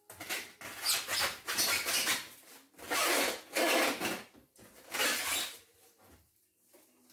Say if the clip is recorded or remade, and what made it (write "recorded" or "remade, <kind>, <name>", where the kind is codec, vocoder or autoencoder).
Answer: recorded